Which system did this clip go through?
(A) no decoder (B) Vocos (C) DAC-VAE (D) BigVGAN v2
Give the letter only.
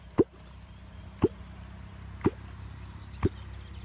A